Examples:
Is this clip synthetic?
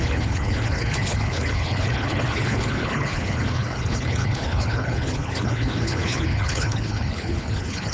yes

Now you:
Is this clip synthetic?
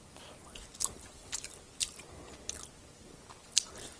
no